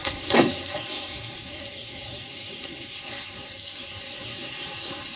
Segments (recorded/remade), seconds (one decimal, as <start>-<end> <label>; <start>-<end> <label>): 0.0-5.2 remade